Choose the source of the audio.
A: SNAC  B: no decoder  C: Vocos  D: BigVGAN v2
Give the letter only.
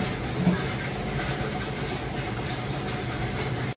B